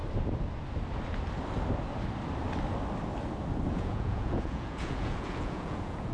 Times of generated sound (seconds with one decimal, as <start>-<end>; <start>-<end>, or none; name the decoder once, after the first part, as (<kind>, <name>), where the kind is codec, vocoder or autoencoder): 3.7-6.1 (vocoder, Vocos)